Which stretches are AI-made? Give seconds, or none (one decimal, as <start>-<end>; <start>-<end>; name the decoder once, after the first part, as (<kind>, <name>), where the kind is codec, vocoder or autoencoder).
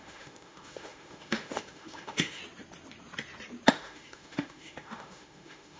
0.0-2.4 (autoencoder, DAC-VAE); 3.7-5.8